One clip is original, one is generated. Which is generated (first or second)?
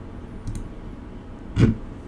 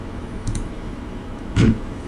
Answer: second